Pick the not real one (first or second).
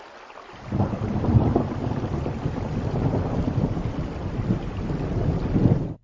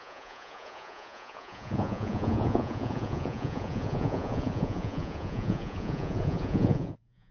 second